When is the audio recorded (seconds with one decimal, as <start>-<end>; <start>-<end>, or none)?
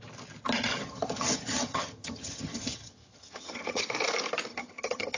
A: 0.0-0.7; 3.8-4.5